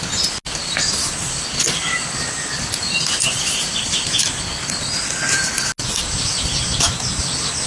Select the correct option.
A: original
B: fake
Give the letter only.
A